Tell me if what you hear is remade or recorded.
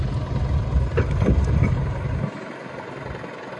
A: recorded